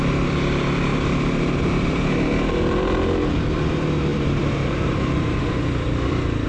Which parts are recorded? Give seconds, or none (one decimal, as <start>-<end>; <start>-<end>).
0.0-0.9; 2.8-4.1; 5.4-6.5